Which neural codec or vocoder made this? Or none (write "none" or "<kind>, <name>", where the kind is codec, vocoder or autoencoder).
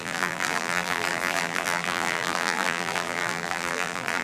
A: vocoder, BigVGAN v2